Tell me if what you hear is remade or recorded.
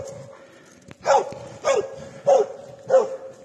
recorded